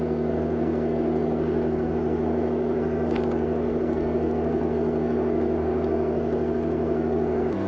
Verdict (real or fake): fake